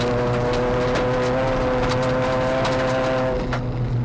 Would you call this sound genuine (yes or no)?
yes